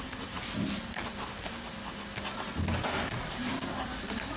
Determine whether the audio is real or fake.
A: real